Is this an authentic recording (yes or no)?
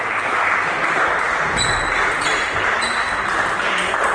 yes